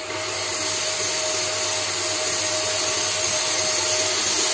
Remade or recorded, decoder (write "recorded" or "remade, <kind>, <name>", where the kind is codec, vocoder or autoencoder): recorded